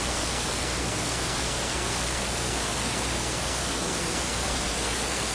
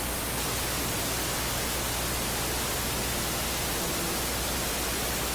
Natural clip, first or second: second